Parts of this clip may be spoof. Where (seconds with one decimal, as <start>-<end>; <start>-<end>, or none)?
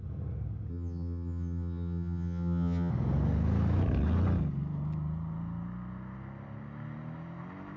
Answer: 0.7-2.9